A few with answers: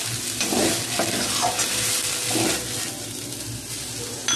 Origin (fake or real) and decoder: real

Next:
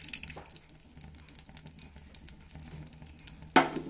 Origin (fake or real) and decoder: real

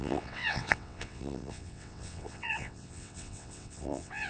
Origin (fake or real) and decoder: fake, vocoder, WaveNeXt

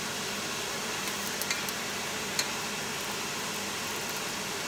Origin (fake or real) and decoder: real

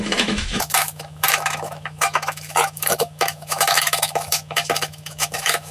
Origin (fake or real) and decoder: fake, autoencoder, DAC-VAE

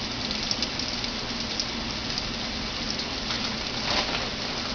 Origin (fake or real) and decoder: real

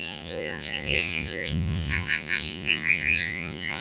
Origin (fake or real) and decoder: fake, vocoder, Vocos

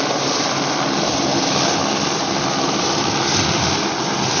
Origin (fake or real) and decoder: real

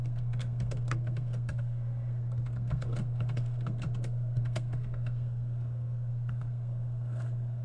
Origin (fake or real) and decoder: fake, codec, SNAC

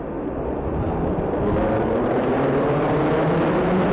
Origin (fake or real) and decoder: real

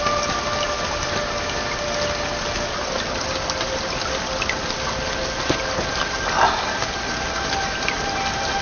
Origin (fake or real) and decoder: real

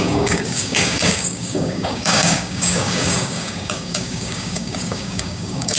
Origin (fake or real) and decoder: fake, codec, DAC